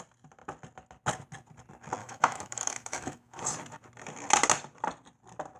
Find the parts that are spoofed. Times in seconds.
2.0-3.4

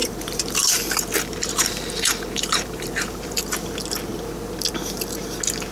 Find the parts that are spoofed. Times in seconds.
0.0-3.4

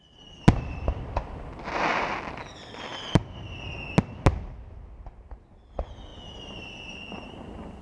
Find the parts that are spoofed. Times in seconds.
none